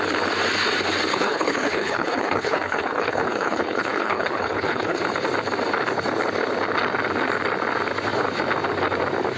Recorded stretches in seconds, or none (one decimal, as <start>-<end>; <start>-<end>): 0.0-1.1; 5.0-9.4